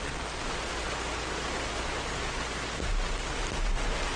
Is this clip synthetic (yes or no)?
no